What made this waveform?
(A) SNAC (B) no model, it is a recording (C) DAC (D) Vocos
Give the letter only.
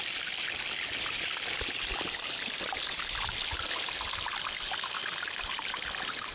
B